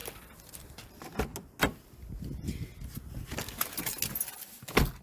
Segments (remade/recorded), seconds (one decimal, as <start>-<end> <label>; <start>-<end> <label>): 0.0-0.6 recorded; 0.6-1.3 remade; 1.3-4.3 recorded; 4.3-5.0 remade